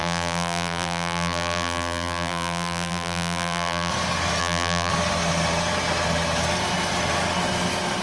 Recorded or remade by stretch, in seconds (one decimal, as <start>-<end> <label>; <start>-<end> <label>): 0.0-3.9 remade; 3.9-4.4 recorded; 4.4-4.9 remade; 4.9-8.0 recorded

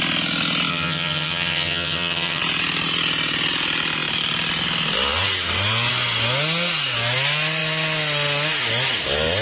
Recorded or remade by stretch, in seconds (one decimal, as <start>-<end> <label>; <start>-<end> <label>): 0.0-0.7 recorded; 0.7-2.4 remade; 2.4-9.4 recorded

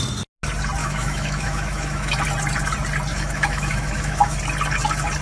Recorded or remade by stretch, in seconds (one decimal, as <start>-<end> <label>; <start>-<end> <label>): 0.0-0.8 recorded; 0.8-2.1 remade; 2.1-3.1 recorded; 3.1-4.4 remade; 4.4-5.2 recorded

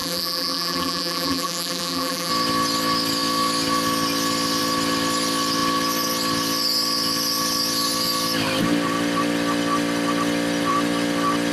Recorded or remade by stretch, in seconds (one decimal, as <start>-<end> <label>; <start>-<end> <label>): 0.0-2.3 remade; 2.3-11.5 recorded

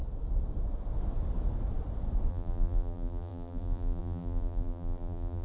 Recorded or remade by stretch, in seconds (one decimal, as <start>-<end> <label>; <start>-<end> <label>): 0.0-2.3 recorded; 2.3-5.4 remade